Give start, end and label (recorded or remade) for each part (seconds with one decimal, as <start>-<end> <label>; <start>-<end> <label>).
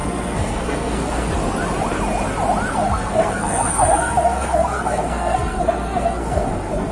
0.0-1.3 remade; 1.3-2.7 recorded; 2.7-6.9 remade